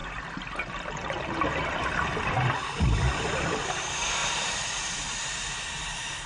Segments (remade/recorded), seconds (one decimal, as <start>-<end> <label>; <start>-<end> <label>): 0.0-6.3 recorded